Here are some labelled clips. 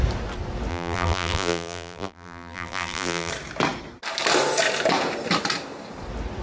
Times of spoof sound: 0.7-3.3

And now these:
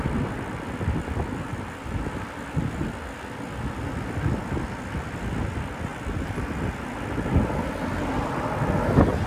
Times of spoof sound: 1.5-2.6

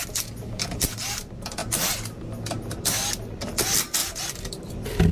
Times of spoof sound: none

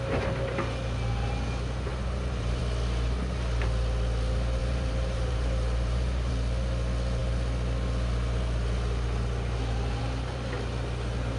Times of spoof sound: 1.9-2.6; 4.6-6.3

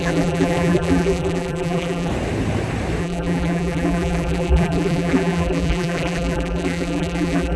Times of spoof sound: 0.0-2.1; 3.0-7.6